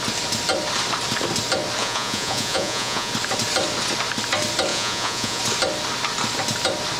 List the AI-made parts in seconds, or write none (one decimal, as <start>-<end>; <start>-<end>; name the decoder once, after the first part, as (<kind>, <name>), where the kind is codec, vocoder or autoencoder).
1.8-3.1 (vocoder, Vocos); 4.7-5.4